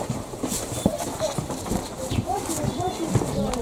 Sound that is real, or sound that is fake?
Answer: real